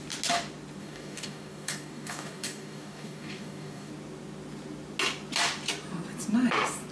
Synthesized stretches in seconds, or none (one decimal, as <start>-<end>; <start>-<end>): 0.8-3.9